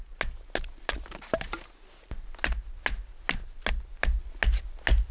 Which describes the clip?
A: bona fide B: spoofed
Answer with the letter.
A